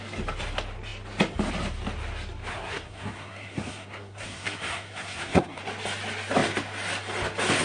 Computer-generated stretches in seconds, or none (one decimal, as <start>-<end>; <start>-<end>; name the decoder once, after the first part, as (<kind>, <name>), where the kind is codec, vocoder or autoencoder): 2.5-5.6 (codec, SNAC)